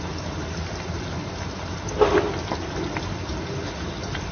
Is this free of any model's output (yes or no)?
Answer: yes